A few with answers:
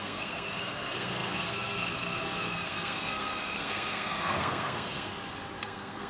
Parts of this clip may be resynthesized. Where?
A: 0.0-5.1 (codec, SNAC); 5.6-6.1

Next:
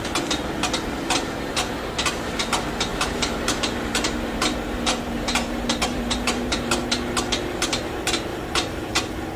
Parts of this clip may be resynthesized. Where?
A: 2.9-6.7 (vocoder, BigVGAN v2); 8.3-8.9

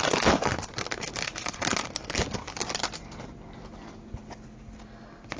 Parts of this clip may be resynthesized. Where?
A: none

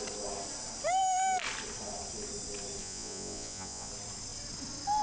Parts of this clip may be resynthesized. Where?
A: 2.8-3.9 (vocoder, Vocos)

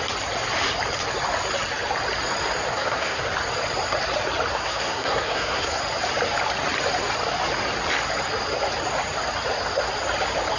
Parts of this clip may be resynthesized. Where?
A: 2.7-3.2 (codec, SNAC); 4.5-5.8

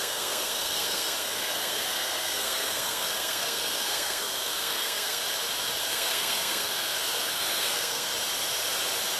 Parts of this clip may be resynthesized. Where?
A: 0.0-5.2 (codec, SNAC); 5.8-8.1

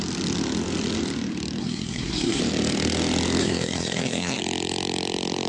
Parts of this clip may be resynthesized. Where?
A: 1.6-2.4 (codec, SNAC); 3.4-4.4

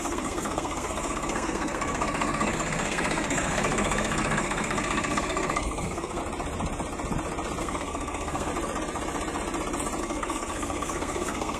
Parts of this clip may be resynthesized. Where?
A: 0.0-6.2 (codec, SNAC); 7.6-8.5; 10.0-11.6